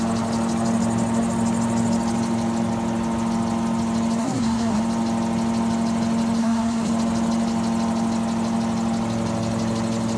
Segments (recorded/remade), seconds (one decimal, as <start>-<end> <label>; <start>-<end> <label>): 0.0-4.2 recorded; 4.2-4.8 remade; 4.8-6.4 recorded; 6.4-6.9 remade; 6.9-10.2 recorded